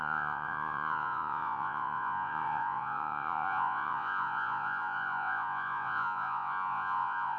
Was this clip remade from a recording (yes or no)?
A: yes